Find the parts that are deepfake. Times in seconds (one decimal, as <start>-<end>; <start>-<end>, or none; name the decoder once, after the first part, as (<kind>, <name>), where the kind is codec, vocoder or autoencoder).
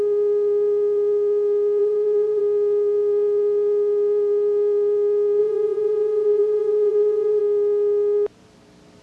1.8-2.4 (vocoder, Vocos); 5.4-7.4